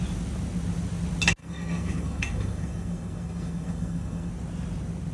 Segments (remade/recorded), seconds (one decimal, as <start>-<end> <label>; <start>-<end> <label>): 0.0-1.4 recorded; 1.4-4.3 remade; 4.3-5.1 recorded